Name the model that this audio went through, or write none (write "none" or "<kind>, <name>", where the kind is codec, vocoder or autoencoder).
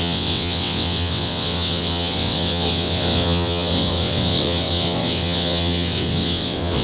vocoder, WaveNeXt